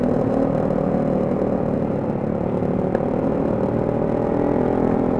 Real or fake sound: real